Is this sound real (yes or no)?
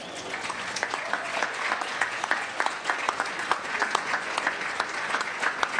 no